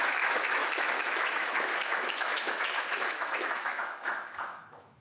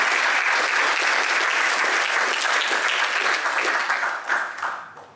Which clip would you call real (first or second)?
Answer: second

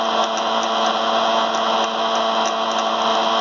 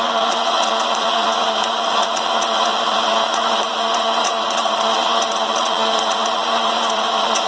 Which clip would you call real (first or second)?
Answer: first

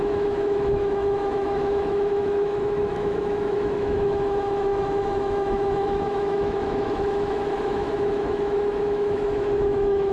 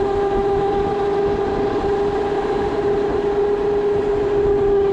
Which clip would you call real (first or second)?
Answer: second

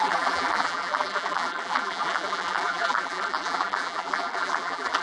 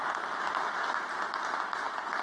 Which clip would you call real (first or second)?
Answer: second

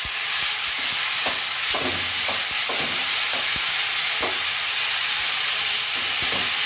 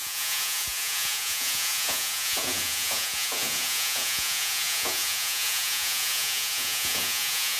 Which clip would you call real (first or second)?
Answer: first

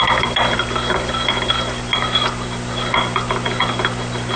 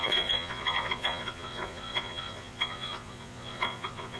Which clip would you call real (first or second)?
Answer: first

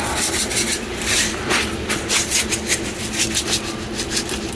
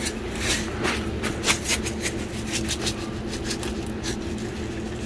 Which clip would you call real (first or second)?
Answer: second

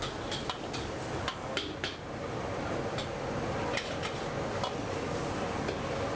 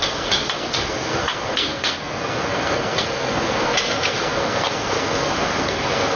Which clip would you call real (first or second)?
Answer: first